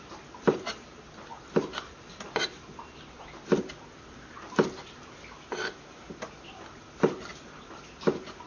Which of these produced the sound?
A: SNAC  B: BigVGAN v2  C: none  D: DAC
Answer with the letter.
C